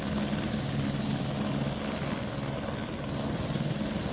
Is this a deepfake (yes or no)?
no